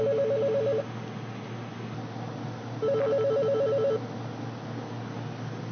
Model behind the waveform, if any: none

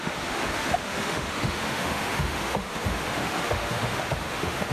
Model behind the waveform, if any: autoencoder, DAC-VAE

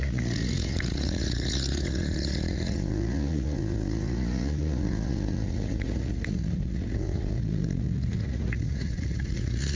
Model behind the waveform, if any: vocoder, Vocos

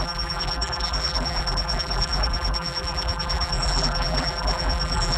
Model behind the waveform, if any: vocoder, BigVGAN v2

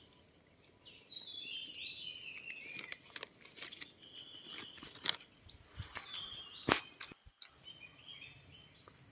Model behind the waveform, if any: none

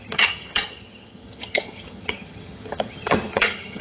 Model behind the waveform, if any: vocoder, HiFi-GAN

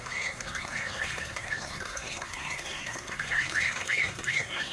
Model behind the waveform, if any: codec, SNAC